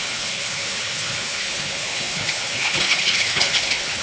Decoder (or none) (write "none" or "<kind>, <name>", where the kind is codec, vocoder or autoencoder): codec, HILCodec